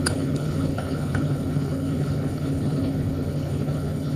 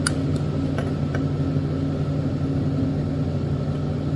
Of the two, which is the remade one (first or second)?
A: first